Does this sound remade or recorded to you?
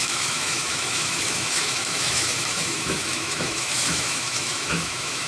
remade